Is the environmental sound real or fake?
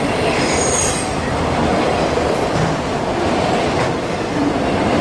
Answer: fake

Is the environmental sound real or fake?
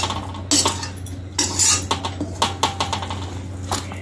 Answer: real